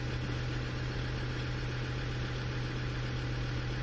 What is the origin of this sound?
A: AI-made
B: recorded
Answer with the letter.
B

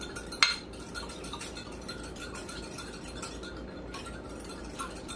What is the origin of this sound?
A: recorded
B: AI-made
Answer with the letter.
A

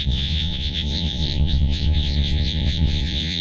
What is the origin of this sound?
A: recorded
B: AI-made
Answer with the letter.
B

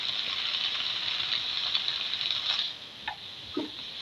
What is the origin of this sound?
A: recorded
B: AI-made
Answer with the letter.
A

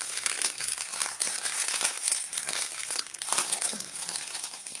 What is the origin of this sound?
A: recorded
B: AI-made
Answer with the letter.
B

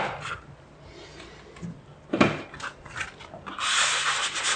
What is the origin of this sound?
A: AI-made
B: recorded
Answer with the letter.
B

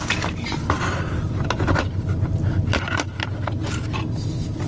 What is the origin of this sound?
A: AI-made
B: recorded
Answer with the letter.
B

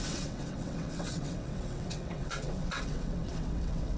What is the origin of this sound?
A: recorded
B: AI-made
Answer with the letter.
B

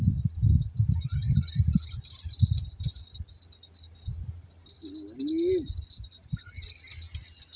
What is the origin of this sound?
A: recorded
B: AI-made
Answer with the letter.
A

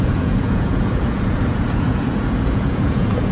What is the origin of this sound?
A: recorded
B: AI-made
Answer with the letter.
B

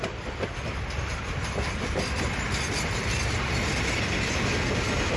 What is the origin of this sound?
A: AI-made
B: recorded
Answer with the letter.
B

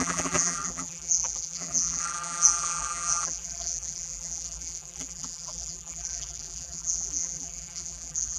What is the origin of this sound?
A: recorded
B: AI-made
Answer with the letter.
B